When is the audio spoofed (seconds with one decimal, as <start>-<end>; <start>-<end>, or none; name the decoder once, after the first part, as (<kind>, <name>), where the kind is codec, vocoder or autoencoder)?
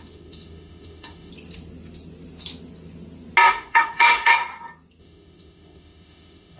0.0-1.3 (autoencoder, DAC-VAE); 3.5-4.3; 5.0-6.6